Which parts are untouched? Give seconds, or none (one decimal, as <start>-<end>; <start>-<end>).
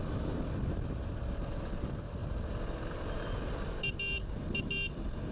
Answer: 0.0-5.3